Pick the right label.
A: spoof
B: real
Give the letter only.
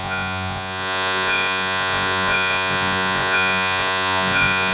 A